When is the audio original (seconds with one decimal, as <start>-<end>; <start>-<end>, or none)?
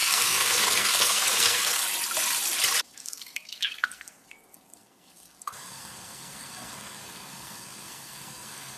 1.8-2.8